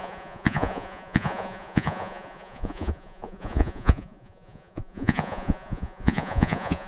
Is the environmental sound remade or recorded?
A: remade